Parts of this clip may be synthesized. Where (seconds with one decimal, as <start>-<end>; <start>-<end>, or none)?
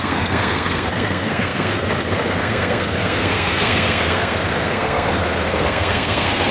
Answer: 0.0-6.5